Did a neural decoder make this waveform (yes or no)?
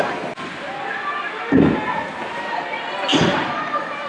yes